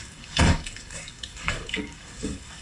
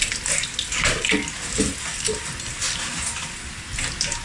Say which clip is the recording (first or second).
second